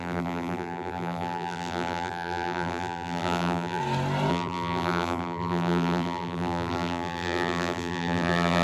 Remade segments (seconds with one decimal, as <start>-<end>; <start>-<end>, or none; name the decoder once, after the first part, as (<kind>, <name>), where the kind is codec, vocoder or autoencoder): 0.0-3.8 (vocoder, BigVGAN v2); 4.3-8.6